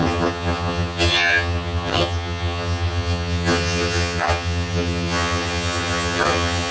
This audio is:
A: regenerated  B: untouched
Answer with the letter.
A